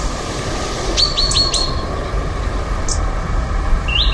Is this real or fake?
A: real